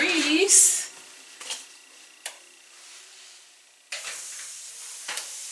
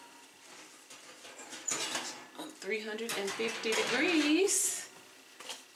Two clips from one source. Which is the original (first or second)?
second